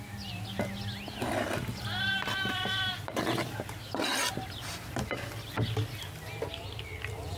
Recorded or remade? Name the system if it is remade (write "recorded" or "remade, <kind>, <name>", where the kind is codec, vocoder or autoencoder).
recorded